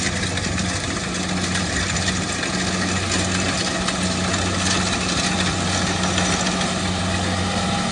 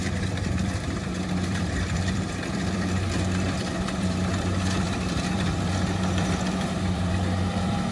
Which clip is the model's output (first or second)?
second